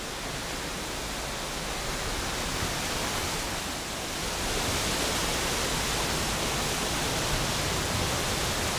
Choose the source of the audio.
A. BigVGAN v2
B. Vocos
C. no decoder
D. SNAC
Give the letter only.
C